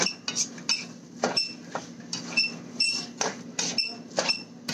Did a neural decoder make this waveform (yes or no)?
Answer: no